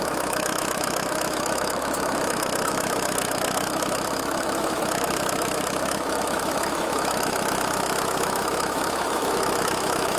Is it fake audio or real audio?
fake